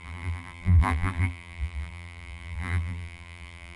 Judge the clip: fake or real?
fake